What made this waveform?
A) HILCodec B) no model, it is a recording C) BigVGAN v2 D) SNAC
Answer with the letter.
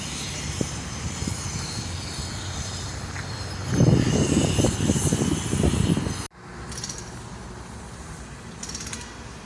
B